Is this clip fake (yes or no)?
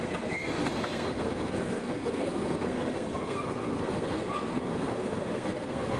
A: yes